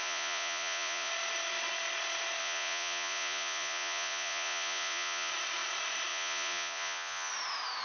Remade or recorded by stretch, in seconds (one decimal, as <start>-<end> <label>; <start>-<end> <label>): 0.0-1.1 remade; 1.1-2.4 recorded; 2.4-5.3 remade; 5.3-6.1 recorded; 6.1-7.3 remade; 7.3-7.8 recorded